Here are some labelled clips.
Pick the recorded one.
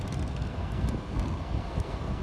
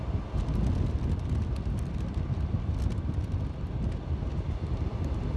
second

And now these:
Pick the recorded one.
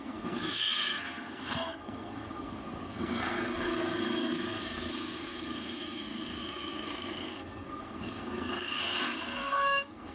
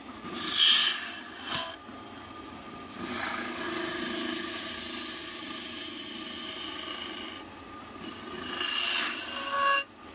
second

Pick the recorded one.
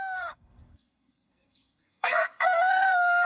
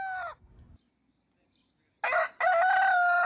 second